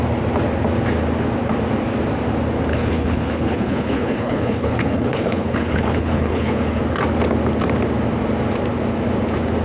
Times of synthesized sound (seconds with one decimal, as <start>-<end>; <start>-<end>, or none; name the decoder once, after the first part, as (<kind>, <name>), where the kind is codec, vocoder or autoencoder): 2.7-6.8 (codec, HILCodec)